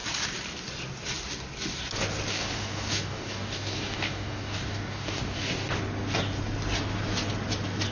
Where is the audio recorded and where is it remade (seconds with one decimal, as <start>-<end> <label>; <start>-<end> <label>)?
0.0-2.3 recorded; 2.3-5.7 remade; 5.7-7.9 recorded